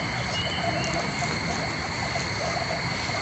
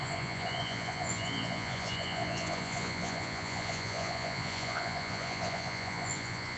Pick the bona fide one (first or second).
first